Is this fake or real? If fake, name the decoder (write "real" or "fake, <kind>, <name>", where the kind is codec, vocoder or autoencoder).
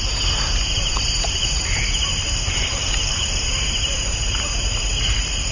fake, vocoder, BigVGAN v2